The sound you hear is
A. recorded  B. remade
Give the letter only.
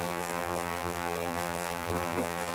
B